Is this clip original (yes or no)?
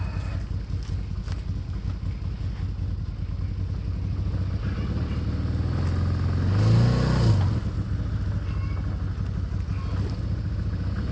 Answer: yes